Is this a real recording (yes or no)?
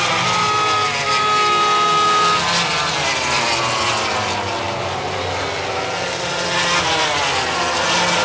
yes